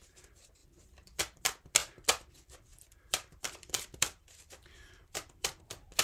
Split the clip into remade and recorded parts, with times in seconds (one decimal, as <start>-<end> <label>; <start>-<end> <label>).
0.0-0.6 recorded; 0.6-1.4 remade; 1.4-1.8 recorded; 1.8-2.3 remade; 2.3-2.7 recorded; 2.7-5.6 remade; 5.6-6.0 recorded